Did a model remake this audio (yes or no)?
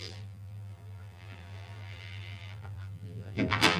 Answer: yes